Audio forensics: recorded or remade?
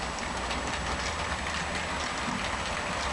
recorded